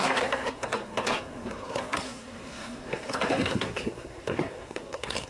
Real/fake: fake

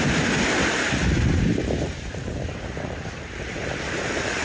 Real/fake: fake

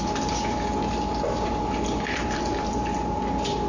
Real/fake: real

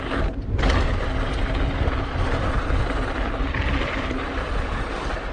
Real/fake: real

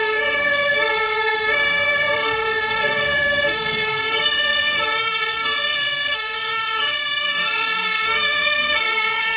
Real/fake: fake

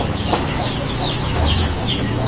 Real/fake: fake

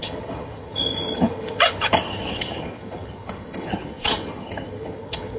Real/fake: fake